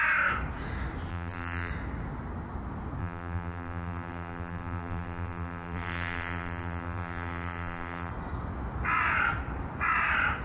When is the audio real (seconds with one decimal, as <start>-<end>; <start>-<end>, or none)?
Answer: 0.0-1.1; 1.7-3.0; 8.1-10.4